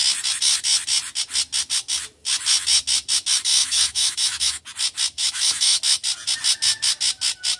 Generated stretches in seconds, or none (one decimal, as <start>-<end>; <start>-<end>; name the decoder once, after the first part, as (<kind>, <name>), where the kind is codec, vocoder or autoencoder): 3.6-4.6 (autoencoder, DAC-VAE); 5.2-5.8